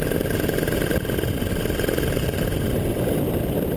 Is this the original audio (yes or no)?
no